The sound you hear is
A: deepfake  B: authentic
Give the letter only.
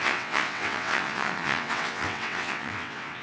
A